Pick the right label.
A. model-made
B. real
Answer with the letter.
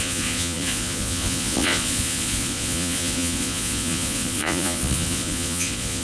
A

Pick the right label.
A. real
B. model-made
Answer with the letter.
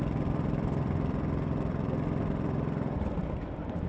B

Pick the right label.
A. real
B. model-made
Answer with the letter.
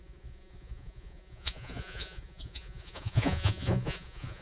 B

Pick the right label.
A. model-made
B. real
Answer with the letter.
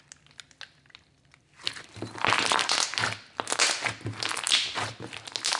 B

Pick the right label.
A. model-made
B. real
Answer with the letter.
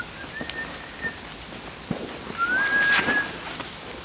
B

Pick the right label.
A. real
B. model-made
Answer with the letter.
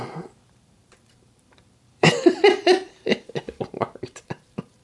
B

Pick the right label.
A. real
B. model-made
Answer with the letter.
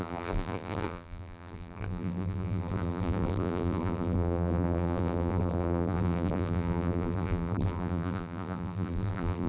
B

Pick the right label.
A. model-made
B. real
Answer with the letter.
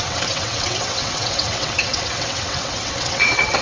A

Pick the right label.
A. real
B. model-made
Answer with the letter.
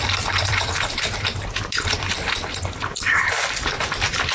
B